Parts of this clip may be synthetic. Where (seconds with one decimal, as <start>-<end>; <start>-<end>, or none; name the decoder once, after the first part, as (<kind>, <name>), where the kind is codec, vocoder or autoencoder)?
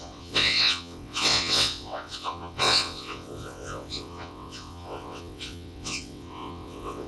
0.0-7.1 (vocoder, WaveNeXt)